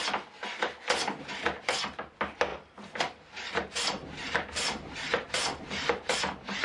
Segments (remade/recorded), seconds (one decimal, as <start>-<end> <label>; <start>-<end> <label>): 0.0-2.5 recorded; 2.5-6.6 remade